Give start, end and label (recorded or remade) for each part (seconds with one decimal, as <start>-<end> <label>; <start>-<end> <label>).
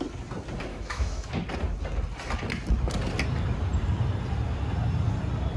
0.0-0.7 recorded; 0.7-1.3 remade; 1.3-5.6 recorded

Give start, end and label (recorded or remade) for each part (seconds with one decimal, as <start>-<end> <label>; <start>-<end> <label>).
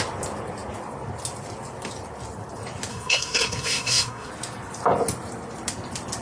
0.0-2.9 recorded; 2.9-4.3 remade; 4.3-6.2 recorded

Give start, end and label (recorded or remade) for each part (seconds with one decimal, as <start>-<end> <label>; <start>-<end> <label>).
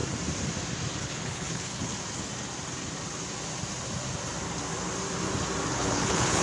0.0-1.0 recorded; 1.0-1.9 remade; 1.9-5.7 recorded; 5.7-6.4 remade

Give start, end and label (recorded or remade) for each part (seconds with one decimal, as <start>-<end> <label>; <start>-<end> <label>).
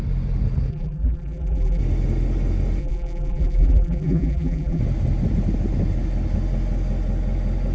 0.0-0.7 recorded; 0.7-1.8 remade; 1.8-2.8 recorded; 2.8-4.8 remade; 4.8-7.7 recorded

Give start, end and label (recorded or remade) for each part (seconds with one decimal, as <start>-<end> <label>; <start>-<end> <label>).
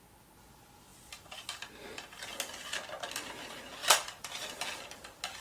0.0-3.8 recorded; 3.8-4.6 remade; 4.6-5.4 recorded